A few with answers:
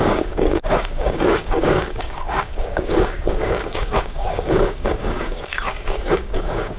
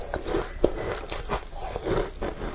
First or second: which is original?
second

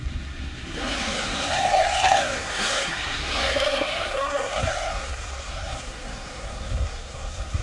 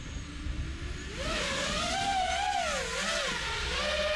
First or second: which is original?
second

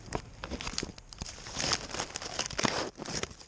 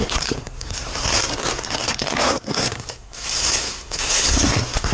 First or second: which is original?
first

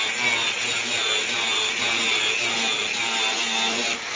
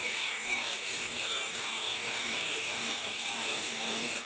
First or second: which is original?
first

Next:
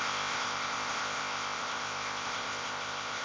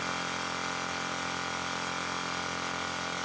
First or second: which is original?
second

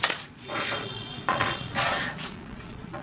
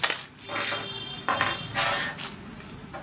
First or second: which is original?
second